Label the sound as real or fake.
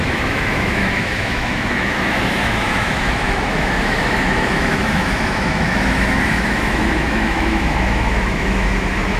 fake